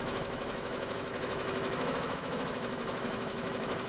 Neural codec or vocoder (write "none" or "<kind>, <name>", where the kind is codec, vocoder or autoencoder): autoencoder, DAC-VAE